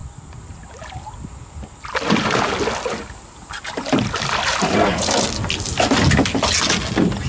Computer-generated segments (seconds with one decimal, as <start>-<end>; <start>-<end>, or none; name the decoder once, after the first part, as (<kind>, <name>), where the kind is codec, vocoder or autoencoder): none